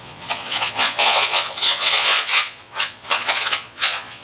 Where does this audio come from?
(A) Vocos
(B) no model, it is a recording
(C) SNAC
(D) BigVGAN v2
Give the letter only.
A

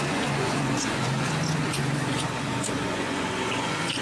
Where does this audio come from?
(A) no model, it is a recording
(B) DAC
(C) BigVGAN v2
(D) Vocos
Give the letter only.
D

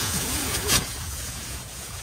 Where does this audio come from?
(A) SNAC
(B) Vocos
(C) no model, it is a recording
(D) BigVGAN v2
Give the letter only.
B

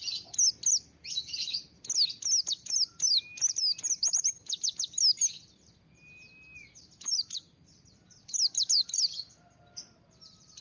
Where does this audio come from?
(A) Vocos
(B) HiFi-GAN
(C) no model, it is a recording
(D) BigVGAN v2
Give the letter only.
C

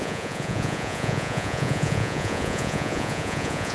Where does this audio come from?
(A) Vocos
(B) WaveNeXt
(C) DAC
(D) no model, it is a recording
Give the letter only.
A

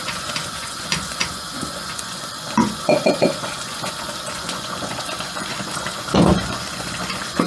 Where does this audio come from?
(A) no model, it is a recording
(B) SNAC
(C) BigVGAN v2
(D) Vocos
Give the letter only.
D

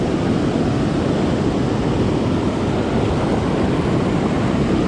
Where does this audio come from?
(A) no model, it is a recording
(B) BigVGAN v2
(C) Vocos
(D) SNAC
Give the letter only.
A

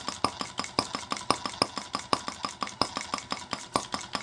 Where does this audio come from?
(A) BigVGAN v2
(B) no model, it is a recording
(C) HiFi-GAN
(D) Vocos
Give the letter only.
B